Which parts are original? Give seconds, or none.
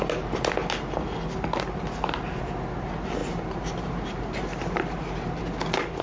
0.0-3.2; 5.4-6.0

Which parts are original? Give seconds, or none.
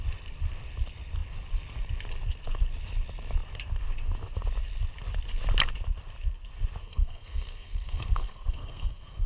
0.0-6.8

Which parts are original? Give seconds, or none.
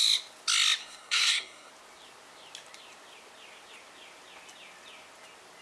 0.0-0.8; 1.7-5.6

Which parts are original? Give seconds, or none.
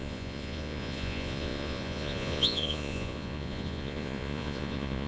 none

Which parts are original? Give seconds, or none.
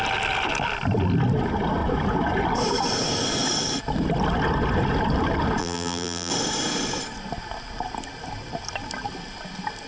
0.0-5.6; 6.3-9.9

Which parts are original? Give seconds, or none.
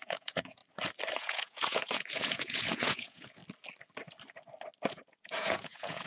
0.6-1.1; 3.4-4.9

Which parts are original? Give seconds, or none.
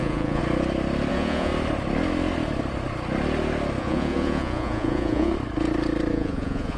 0.4-1.1; 1.5-3.8; 5.3-6.1